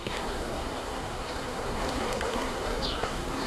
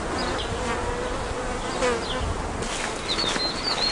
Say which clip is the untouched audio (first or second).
second